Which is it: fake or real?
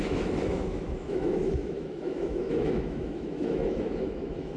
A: fake